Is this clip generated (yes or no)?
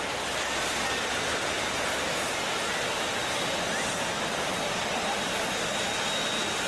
no